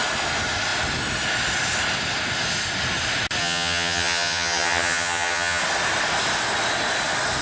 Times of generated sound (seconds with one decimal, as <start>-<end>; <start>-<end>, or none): 3.4-5.6